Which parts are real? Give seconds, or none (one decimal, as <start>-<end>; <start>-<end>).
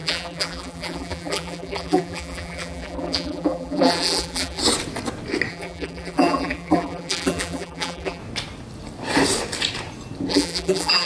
4.6-5.5; 8.2-10.3